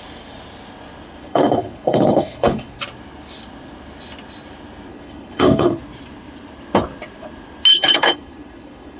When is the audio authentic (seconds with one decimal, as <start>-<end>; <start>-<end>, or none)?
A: 0.0-1.2; 2.8-4.9; 5.8-7.7